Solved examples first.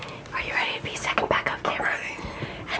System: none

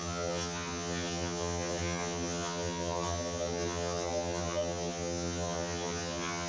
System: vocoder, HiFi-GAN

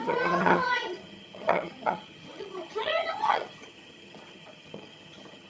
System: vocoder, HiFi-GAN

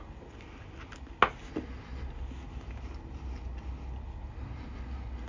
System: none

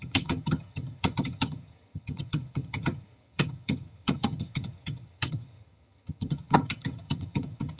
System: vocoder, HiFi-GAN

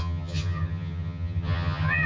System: vocoder, HiFi-GAN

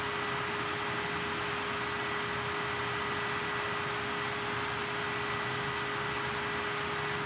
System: none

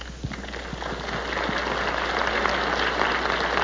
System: none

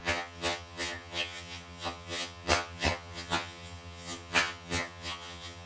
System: vocoder, HiFi-GAN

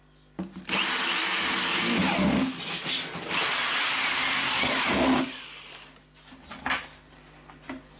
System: none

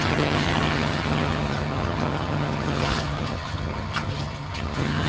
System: vocoder, HiFi-GAN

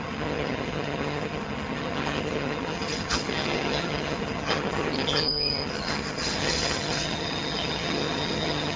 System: vocoder, HiFi-GAN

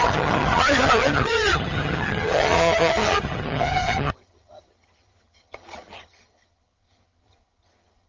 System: vocoder, HiFi-GAN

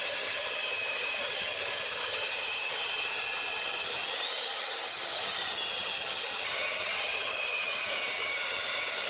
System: vocoder, HiFi-GAN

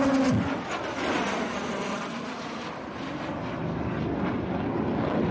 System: none